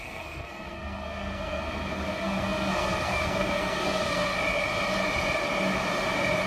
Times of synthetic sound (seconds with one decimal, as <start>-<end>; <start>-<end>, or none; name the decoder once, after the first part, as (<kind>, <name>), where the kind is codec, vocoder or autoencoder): 0.0-4.3 (codec, SNAC)